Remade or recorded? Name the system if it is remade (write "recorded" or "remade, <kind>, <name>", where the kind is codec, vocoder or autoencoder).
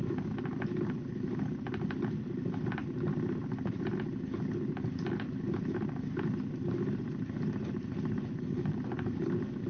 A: recorded